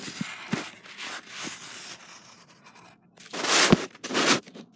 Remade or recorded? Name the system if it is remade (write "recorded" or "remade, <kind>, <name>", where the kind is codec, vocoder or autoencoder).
recorded